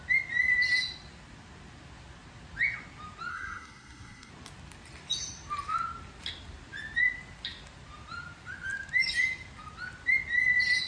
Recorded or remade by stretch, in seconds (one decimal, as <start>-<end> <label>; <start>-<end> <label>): 0.0-3.3 recorded; 3.3-4.3 remade; 4.3-10.9 recorded

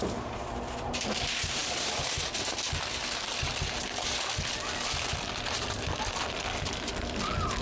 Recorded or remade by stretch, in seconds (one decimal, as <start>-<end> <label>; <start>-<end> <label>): 0.0-7.6 recorded

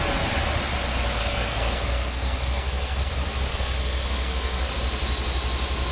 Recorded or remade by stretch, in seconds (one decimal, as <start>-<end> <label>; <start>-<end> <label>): 0.0-1.2 recorded; 1.2-3.1 remade; 3.1-3.5 recorded; 3.5-4.7 remade; 4.7-5.9 recorded

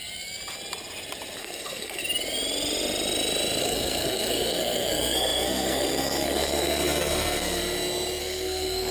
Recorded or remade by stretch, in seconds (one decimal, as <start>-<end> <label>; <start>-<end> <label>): 0.0-1.4 recorded; 1.4-2.0 remade; 2.0-3.6 recorded; 3.6-7.6 remade; 7.6-8.2 recorded; 8.2-8.9 remade

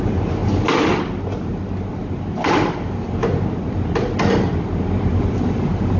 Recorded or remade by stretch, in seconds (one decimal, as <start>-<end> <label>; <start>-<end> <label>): 0.0-6.0 recorded

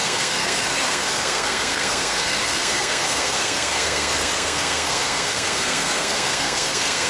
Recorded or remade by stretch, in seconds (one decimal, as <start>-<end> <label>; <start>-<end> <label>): 0.0-7.1 remade